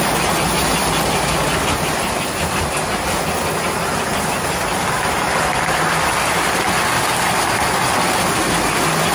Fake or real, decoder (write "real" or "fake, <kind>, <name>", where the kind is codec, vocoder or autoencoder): real